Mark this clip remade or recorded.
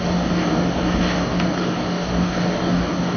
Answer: remade